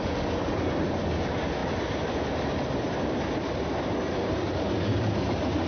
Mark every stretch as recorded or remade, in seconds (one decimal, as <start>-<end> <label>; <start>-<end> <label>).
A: 0.0-5.7 recorded